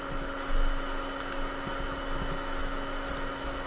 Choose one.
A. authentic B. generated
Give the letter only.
A